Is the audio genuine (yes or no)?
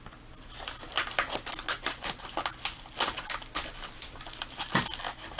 yes